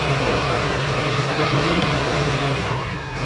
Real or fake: fake